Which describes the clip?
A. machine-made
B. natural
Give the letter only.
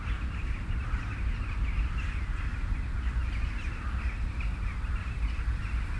B